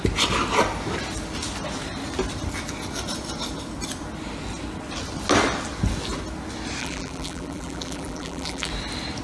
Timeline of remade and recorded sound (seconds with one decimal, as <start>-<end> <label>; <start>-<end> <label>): 0.0-6.8 recorded; 6.8-8.7 remade; 8.7-9.2 recorded